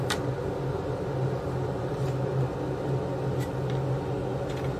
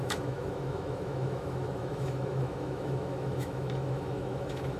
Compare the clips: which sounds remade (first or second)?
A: second